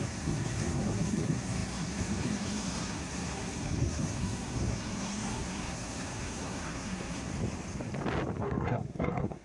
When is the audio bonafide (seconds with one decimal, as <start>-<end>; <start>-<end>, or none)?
7.3-8.4